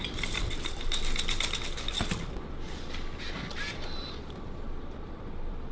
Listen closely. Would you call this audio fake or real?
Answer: real